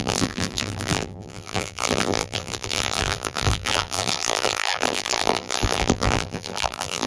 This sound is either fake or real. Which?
fake